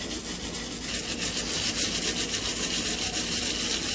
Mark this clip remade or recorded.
recorded